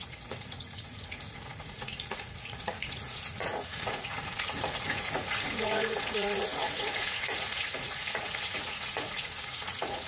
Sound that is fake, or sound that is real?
fake